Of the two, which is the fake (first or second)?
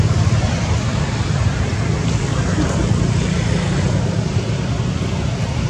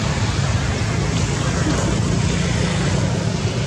first